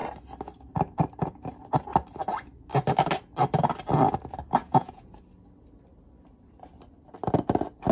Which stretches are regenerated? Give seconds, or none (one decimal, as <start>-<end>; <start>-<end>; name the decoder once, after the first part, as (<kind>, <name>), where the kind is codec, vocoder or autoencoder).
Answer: 4.6-5.2 (vocoder, Vocos)